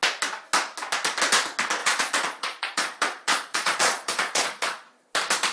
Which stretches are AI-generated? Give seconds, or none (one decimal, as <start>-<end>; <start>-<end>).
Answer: 1.8-5.1